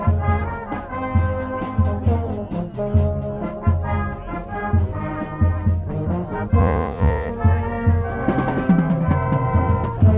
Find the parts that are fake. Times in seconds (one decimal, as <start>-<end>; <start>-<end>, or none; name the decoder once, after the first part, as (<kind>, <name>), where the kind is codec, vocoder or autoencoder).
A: 6.6-7.3 (vocoder, Vocos)